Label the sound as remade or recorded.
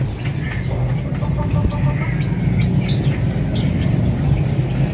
recorded